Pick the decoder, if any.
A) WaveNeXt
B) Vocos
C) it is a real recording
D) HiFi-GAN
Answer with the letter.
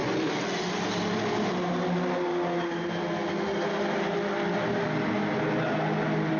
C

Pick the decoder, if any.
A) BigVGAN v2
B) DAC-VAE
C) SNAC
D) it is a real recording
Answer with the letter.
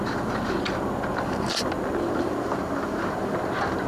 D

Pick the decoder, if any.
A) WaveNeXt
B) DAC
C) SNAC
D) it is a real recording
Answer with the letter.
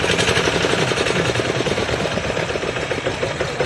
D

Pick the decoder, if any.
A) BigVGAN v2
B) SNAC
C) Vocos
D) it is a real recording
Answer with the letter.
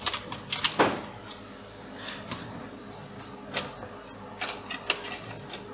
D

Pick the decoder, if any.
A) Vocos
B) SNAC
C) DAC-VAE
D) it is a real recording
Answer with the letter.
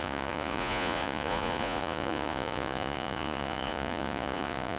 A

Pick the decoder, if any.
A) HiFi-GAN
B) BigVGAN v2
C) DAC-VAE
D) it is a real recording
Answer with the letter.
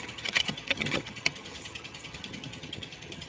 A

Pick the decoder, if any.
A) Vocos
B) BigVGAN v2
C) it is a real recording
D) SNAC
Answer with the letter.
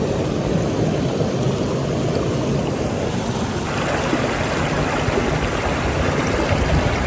C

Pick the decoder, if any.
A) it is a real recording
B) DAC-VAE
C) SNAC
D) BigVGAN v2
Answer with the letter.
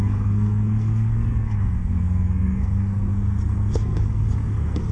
C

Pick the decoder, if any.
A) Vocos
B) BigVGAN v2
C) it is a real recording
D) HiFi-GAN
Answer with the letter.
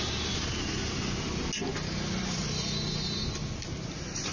C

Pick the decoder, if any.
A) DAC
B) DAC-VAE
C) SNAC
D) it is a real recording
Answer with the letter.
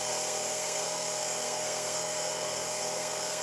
C